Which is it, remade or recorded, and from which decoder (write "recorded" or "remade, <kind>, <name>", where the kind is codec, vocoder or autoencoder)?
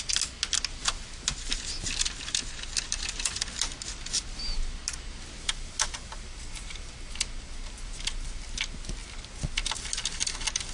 recorded